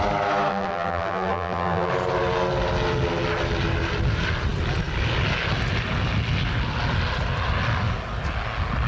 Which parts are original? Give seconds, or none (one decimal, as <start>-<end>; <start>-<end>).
0.0-0.5; 1.9-8.9